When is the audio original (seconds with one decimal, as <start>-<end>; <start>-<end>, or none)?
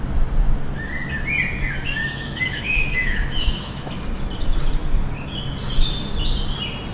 0.0-2.0; 3.9-6.9